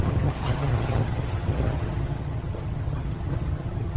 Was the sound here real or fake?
fake